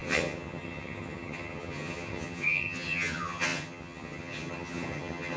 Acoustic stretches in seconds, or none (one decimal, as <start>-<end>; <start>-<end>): none